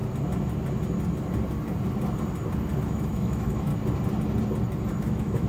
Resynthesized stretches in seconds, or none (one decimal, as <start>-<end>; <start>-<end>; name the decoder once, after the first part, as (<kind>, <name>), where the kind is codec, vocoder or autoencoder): 2.8-3.7 (autoencoder, DAC-VAE); 5.0-5.5